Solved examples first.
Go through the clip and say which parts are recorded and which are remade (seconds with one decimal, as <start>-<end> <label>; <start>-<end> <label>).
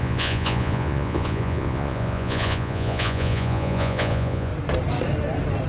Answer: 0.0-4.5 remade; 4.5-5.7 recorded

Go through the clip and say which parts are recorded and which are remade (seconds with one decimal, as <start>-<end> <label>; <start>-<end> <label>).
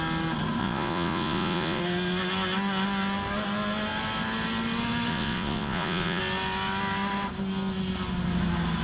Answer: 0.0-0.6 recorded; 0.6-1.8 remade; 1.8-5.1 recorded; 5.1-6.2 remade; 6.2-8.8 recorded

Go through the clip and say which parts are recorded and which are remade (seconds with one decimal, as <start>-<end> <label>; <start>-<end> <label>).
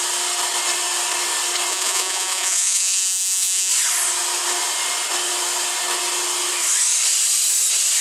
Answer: 0.0-1.7 recorded; 1.7-3.7 remade; 3.7-8.0 recorded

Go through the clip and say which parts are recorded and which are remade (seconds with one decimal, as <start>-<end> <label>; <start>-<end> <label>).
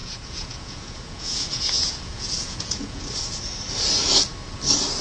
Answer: 0.0-3.0 remade; 3.0-5.0 recorded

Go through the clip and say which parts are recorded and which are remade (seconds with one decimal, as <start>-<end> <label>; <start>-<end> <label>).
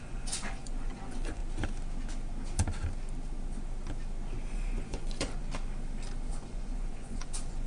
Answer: 0.0-1.4 remade; 1.4-4.5 recorded; 4.5-5.4 remade; 5.4-6.3 recorded; 6.3-7.7 remade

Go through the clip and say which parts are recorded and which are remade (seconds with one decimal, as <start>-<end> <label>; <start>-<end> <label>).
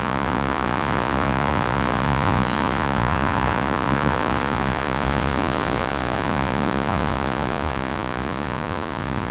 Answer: 0.0-9.3 remade